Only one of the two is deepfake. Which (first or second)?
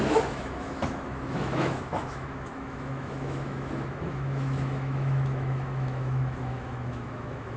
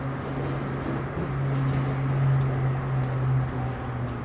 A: first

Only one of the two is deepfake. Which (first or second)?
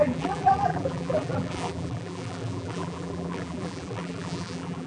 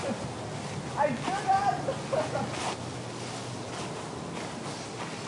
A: first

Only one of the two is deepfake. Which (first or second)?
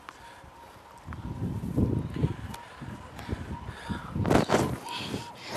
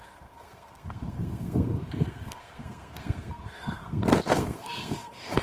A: second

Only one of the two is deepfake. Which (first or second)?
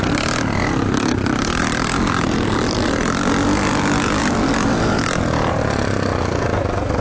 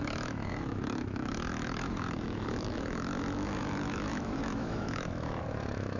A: second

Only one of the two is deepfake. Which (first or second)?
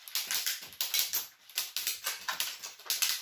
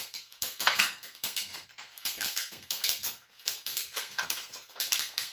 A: second